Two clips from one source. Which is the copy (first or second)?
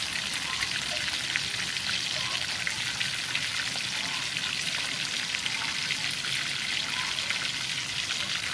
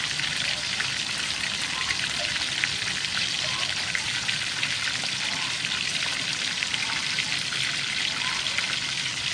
second